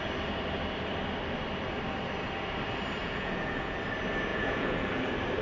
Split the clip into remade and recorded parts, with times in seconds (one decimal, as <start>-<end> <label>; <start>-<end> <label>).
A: 0.0-3.0 recorded; 3.0-3.8 remade; 3.8-4.3 recorded; 4.3-5.0 remade; 5.0-5.4 recorded